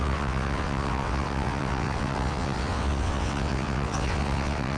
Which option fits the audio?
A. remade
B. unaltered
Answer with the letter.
A